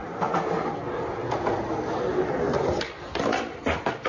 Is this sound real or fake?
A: real